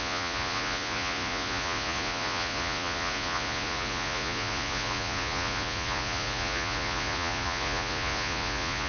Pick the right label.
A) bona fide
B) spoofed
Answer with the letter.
B